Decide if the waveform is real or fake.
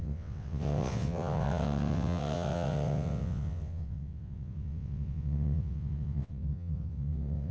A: fake